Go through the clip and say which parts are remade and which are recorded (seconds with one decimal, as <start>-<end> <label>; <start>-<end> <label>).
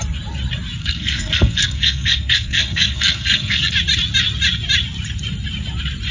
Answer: 0.0-0.8 recorded; 0.8-3.7 remade; 3.7-6.1 recorded